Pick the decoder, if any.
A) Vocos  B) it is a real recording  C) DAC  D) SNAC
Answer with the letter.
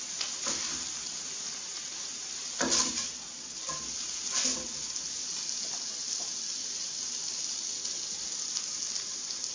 B